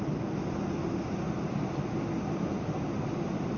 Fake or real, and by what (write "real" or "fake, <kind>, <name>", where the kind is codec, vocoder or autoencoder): real